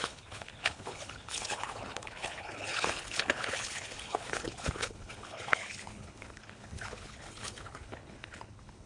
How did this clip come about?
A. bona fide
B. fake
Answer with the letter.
B